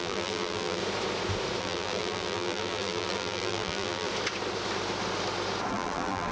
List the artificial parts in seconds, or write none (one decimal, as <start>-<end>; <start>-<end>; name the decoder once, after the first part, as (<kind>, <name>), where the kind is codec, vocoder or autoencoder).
0.0-0.8 (vocoder, BigVGAN v2); 1.6-4.1; 5.7-6.3